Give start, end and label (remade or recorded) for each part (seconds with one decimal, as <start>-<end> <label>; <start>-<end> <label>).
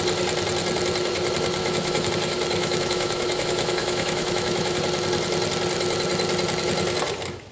0.0-1.6 recorded; 1.6-2.1 remade; 2.1-2.6 recorded; 2.6-4.8 remade; 4.8-7.5 recorded